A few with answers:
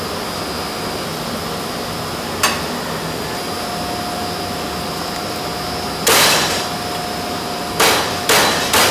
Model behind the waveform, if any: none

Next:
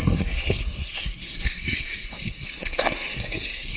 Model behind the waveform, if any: codec, SNAC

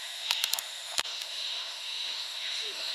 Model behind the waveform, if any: autoencoder, DAC-VAE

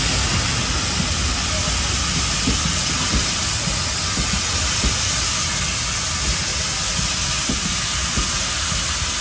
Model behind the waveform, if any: none